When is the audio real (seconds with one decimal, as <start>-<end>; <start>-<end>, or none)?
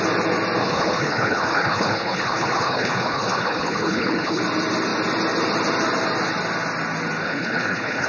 0.0-0.6; 4.4-7.2